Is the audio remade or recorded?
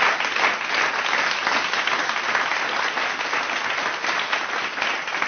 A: recorded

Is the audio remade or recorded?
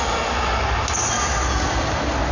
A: recorded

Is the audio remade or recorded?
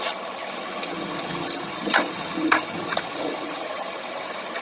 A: remade